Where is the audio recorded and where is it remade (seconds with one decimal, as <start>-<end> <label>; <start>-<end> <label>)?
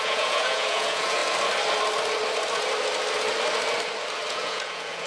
0.0-1.2 remade; 1.2-4.3 recorded; 4.3-5.1 remade